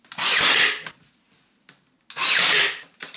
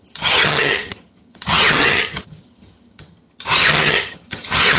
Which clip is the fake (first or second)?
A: second